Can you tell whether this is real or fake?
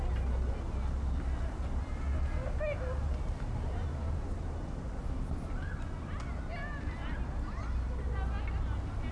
real